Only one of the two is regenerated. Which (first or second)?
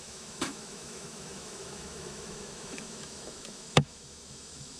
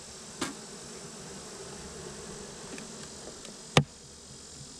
first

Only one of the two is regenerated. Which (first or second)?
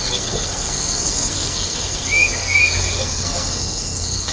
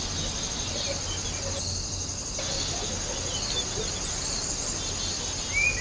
first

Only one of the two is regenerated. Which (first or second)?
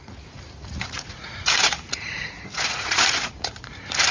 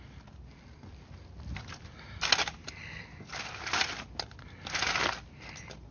first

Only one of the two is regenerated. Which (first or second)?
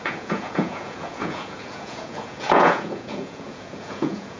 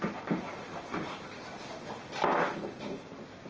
first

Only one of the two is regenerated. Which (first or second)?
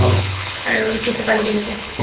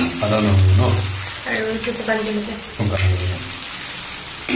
first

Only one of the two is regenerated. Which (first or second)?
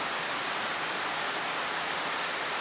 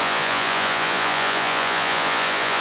second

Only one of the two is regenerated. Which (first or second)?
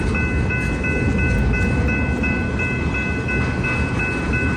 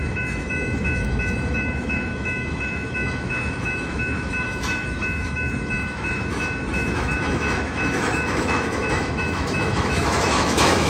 second